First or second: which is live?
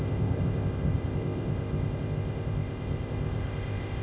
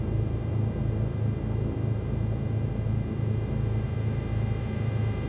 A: second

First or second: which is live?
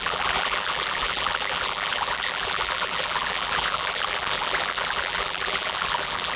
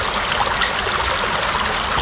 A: second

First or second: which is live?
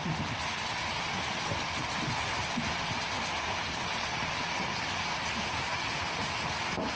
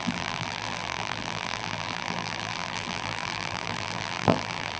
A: first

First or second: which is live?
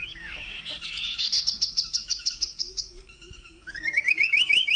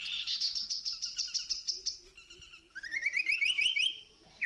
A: second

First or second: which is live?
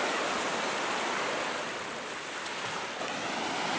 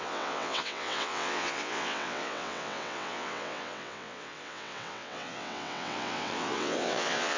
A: first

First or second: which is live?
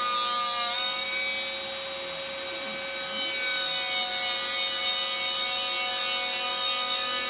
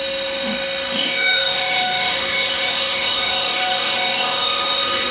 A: first